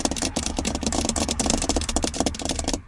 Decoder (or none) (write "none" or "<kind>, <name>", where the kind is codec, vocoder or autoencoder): vocoder, BigVGAN v2